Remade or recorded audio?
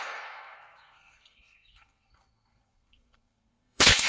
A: remade